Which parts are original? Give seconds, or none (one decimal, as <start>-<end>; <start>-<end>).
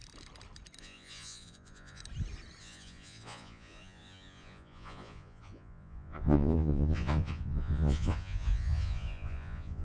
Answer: 0.0-0.8; 2.0-2.6